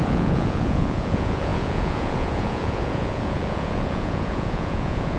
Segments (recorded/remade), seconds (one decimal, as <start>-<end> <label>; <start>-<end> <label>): 0.0-5.2 remade

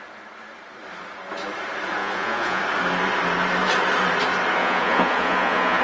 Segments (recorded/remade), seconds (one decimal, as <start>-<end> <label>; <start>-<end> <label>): 0.0-2.0 recorded; 2.0-2.6 remade; 2.6-4.6 recorded; 4.6-5.8 remade

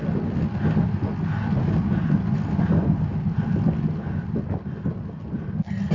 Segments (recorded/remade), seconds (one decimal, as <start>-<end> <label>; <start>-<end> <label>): 0.0-5.9 recorded

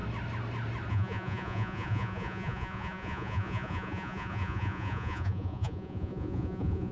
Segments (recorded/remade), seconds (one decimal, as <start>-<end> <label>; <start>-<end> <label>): 0.0-0.9 recorded; 0.9-6.9 remade

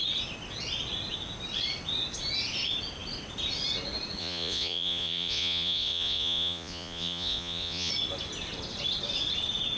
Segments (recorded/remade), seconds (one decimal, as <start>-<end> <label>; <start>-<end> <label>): 0.0-4.2 recorded; 4.2-7.9 remade; 7.9-9.8 recorded

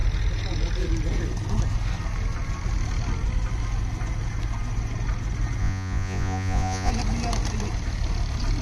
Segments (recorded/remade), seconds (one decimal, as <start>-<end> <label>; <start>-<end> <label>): 0.0-5.6 recorded; 5.6-6.9 remade; 6.9-8.6 recorded